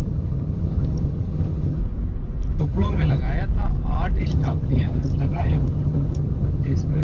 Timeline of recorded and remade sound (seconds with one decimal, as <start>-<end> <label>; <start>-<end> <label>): 0.0-1.8 remade; 1.8-2.6 recorded; 2.6-3.2 remade; 3.2-4.2 recorded; 4.2-7.0 remade